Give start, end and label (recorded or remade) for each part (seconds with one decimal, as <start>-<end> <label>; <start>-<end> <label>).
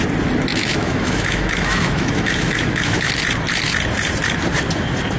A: 0.0-0.5 recorded; 0.5-3.1 remade; 3.1-5.2 recorded